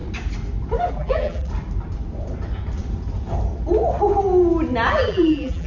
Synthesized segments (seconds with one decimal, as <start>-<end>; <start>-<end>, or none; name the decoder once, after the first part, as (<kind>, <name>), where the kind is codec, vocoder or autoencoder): 0.9-1.5 (vocoder, BigVGAN v2); 4.9-5.7